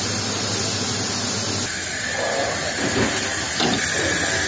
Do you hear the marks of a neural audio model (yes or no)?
no